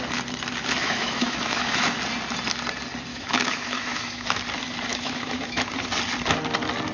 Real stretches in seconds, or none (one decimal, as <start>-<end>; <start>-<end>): 0.0-0.8; 2.0-3.1; 4.4-4.9; 5.6-6.9